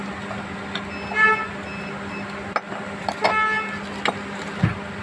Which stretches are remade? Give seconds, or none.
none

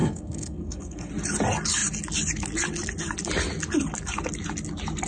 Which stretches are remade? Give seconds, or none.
0.0-1.1 (codec, SNAC)

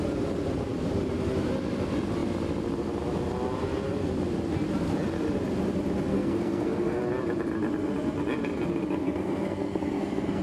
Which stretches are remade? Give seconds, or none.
6.1-7.0 (codec, SNAC); 9.0-10.4

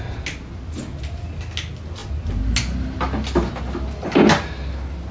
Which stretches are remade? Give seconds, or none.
none

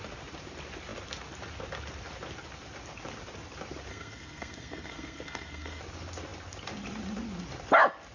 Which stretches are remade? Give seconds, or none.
3.9-5.8 (codec, SNAC)

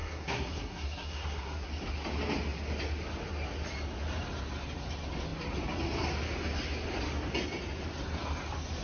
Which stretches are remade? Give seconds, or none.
0.0-1.7 (codec, SNAC)

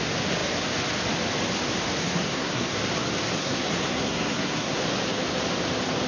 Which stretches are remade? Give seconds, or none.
2.0-2.8 (codec, SNAC); 3.4-4.8

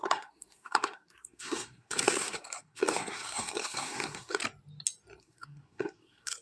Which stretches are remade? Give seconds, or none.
0.0-4.4 (codec, SNAC); 5.2-6.4